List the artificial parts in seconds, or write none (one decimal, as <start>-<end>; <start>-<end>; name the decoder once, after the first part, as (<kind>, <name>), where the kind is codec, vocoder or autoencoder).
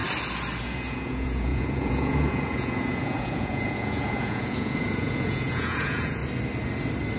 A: 0.6-6.2 (vocoder, Vocos)